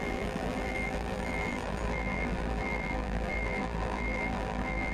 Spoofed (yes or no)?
yes